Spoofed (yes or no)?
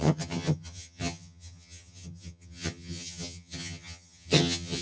yes